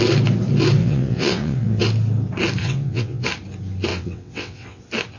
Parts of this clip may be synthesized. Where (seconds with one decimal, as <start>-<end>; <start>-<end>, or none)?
0.8-1.8; 2.6-3.2; 3.9-4.8